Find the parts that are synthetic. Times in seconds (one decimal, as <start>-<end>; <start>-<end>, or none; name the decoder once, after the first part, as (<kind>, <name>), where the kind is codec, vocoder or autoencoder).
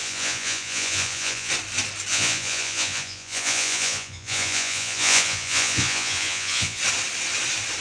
0.0-1.5 (vocoder, Vocos); 2.1-6.8